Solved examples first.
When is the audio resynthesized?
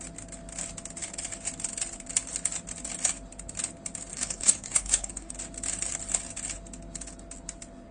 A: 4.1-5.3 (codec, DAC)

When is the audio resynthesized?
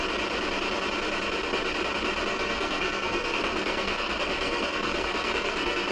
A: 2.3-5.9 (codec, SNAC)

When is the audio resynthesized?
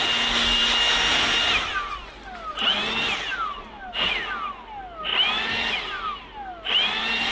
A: none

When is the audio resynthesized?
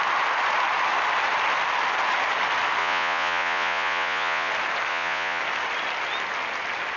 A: 2.8-4.5 (vocoder, Vocos); 4.9-5.4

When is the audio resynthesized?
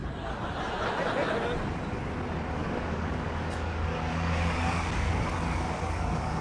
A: 2.5-6.4 (codec, DAC)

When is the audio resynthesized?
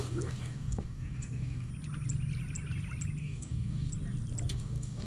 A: 0.0-1.7 (codec, DAC); 3.2-3.9; 4.5-5.1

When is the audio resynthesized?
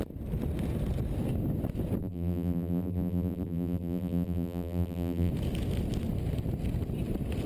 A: 2.0-5.3 (vocoder, BigVGAN v2)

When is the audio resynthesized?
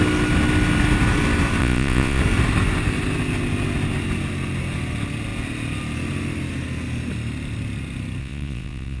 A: 1.6-2.2 (vocoder, Vocos); 8.2-9.0